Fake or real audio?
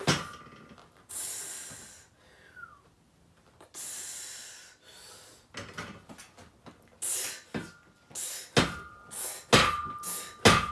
real